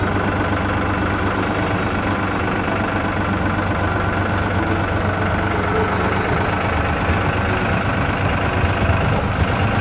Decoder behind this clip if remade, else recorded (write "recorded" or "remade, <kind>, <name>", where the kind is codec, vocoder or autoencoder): recorded